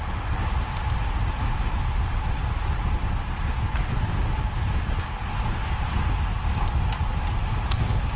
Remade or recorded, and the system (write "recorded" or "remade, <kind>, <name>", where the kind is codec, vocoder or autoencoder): recorded